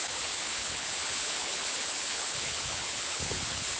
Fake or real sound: fake